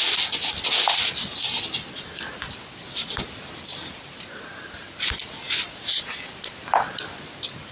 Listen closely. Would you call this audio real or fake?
real